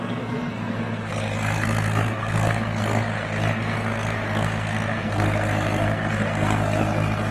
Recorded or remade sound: remade